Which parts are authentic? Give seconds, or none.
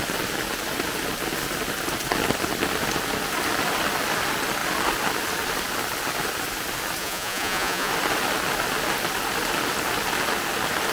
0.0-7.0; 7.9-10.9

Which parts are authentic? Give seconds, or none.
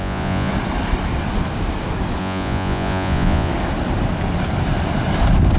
0.5-2.2; 3.5-5.6